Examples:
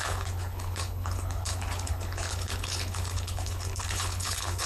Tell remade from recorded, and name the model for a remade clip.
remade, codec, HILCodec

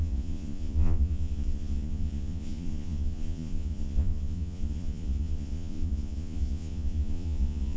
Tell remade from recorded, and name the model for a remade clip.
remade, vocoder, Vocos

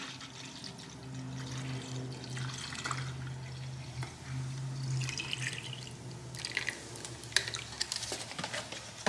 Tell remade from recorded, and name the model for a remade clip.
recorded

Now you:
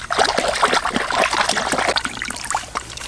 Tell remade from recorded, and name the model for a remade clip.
recorded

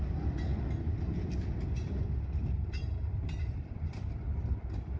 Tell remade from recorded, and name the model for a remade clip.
recorded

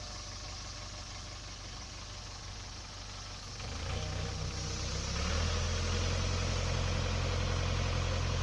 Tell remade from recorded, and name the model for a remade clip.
recorded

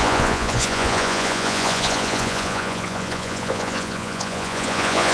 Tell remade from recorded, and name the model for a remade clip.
remade, vocoder, Vocos